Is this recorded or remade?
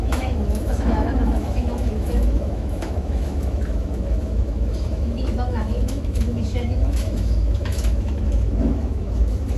remade